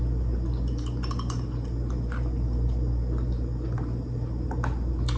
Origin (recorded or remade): recorded